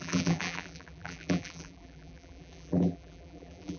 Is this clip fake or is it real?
fake